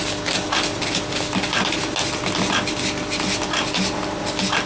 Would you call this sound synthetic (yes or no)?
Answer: no